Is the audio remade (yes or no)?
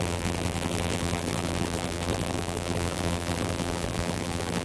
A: yes